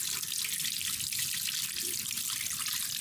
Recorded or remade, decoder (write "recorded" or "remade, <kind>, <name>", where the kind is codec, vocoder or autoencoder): recorded